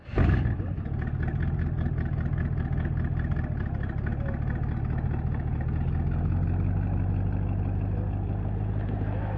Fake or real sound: real